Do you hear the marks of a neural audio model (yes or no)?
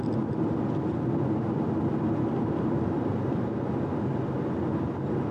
no